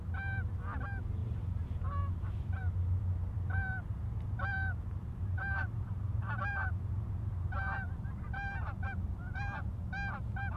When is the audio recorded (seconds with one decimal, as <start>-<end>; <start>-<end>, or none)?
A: 0.0-1.2; 1.8-4.5; 9.1-10.6